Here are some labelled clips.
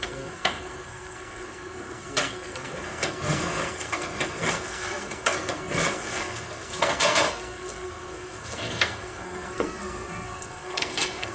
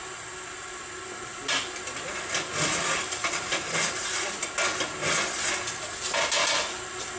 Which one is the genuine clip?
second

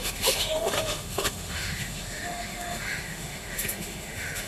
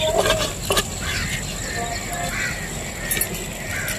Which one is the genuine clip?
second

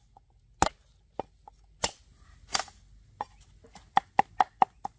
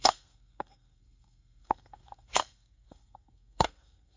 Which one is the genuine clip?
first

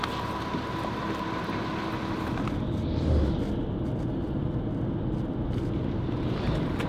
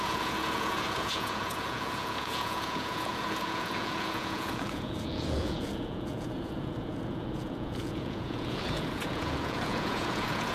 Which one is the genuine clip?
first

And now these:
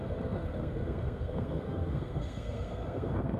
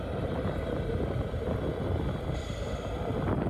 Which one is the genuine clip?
second